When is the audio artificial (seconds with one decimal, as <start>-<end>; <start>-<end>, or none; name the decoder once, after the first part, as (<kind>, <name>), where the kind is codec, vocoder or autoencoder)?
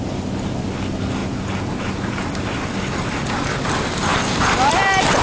none